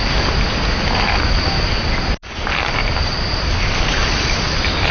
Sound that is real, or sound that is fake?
real